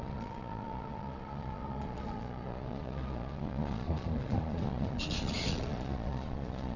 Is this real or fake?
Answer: fake